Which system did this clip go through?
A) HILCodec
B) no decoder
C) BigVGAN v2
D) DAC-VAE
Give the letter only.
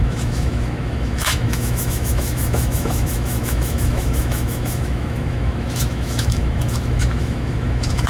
D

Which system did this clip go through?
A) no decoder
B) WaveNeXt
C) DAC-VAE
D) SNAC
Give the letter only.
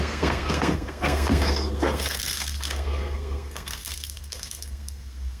D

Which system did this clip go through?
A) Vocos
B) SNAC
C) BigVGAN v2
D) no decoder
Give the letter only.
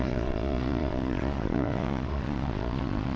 A